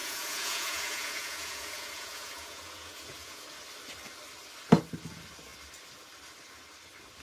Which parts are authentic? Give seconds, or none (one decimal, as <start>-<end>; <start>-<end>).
3.4-7.2